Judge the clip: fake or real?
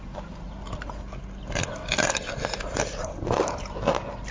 real